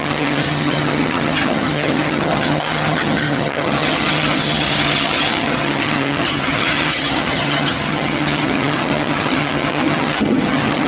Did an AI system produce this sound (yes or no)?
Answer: yes